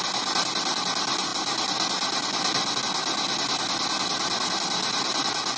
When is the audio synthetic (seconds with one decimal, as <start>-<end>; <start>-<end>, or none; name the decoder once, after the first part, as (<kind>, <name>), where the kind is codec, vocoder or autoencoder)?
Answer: none